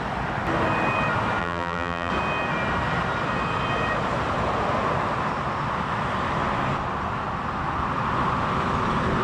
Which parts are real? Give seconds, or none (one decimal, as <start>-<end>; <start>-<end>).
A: 0.0-1.4; 2.1-9.2